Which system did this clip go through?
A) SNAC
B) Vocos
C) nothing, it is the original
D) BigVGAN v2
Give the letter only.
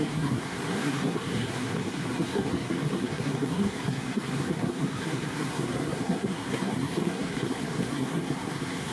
A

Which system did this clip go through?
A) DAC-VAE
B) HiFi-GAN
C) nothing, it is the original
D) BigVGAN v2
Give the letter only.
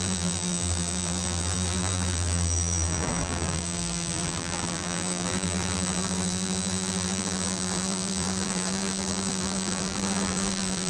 D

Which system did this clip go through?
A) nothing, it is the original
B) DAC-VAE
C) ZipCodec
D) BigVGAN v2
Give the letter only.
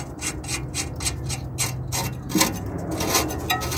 A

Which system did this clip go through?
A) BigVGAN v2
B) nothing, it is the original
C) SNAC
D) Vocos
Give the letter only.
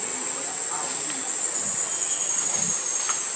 B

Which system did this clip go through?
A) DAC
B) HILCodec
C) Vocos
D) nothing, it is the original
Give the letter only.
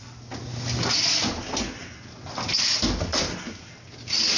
D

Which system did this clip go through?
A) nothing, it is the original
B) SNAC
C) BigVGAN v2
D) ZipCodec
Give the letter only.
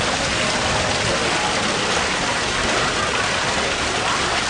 A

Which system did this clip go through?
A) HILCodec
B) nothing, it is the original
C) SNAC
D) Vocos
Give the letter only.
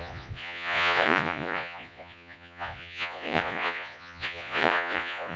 D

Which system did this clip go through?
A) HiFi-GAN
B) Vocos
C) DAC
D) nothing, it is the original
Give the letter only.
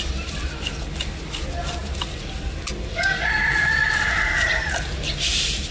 D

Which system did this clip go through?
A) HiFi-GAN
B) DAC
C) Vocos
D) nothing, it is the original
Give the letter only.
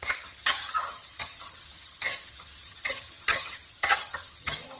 A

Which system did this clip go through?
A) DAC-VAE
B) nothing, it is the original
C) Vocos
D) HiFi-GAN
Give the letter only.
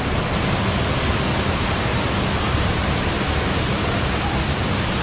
B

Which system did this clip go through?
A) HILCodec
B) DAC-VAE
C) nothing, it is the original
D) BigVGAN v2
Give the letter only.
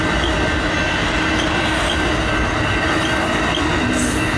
C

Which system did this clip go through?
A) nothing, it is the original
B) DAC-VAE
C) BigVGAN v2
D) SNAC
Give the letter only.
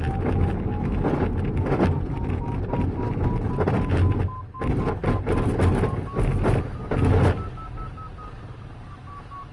A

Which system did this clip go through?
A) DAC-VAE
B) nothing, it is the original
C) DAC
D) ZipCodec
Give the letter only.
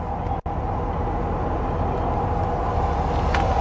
B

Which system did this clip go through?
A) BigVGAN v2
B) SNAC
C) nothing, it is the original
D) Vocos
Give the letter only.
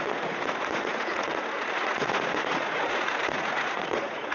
D